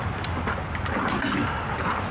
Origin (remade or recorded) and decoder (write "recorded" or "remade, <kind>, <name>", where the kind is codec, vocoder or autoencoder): recorded